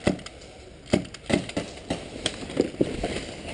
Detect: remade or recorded recorded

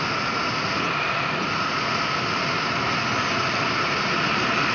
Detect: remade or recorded recorded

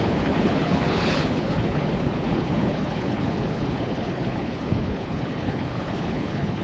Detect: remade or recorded remade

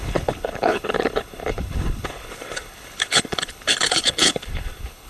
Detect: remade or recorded remade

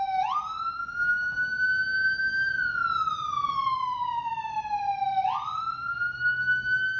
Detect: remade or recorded recorded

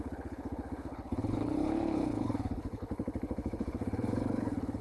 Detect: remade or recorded remade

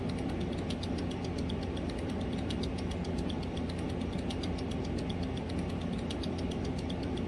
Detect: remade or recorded recorded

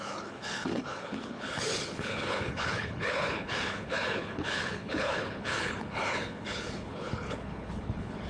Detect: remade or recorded remade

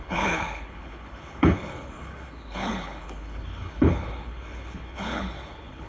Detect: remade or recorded remade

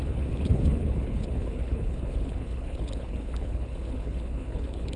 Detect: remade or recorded remade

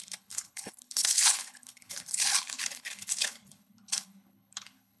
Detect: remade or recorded remade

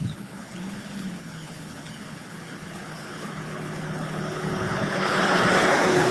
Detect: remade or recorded remade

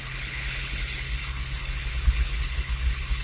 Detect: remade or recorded remade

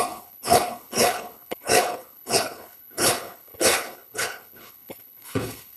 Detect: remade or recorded remade